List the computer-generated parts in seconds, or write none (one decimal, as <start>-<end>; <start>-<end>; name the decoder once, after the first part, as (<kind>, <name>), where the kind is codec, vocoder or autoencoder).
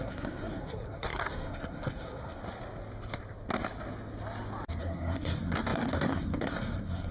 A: 0.0-2.4 (codec, SNAC); 4.8-7.1